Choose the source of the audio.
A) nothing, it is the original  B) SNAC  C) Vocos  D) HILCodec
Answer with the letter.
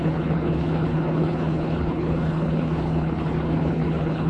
D